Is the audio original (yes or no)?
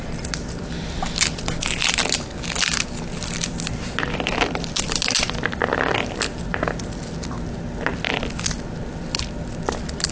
yes